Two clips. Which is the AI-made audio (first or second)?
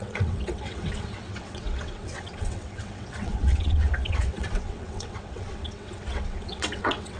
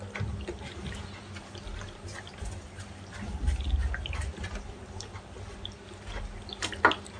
first